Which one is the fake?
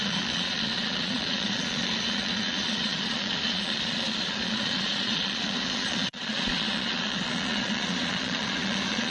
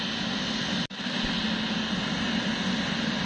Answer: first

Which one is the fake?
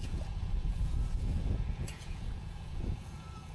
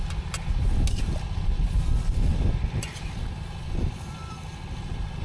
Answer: first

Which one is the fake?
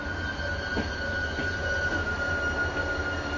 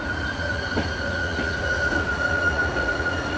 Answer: second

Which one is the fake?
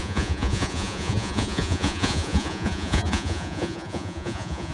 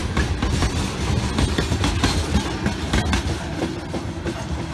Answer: first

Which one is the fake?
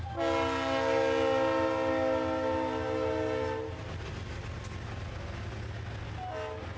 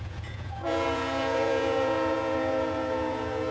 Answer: second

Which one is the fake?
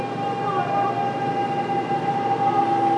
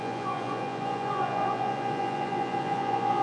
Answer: second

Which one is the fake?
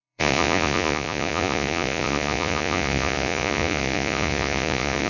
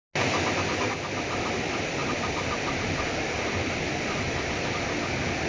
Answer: first